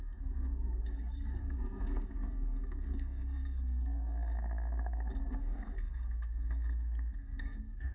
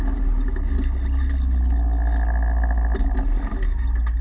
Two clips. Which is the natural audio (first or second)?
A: second